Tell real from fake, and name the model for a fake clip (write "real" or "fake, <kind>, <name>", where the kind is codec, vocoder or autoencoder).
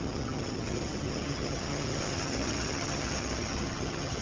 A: fake, vocoder, HiFi-GAN